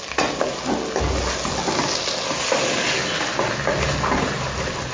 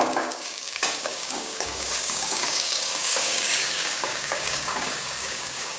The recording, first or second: first